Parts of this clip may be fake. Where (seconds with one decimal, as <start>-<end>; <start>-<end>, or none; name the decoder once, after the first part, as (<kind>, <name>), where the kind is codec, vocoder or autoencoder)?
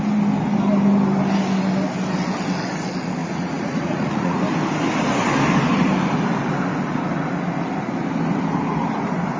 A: 3.2-4.4 (vocoder, Vocos)